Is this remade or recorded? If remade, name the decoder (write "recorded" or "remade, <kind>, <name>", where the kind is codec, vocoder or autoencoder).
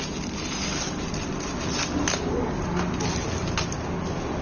recorded